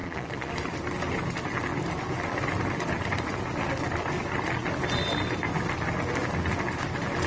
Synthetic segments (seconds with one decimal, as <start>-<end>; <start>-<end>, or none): 0.0-0.5